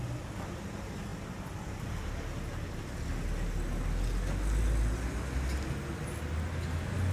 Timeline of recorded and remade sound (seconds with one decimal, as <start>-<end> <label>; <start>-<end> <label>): 0.0-7.1 recorded